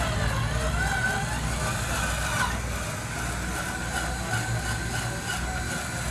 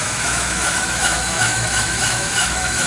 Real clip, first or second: first